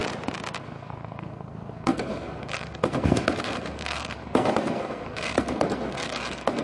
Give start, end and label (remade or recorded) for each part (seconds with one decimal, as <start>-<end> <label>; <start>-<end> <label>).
0.0-0.6 recorded; 0.6-6.6 remade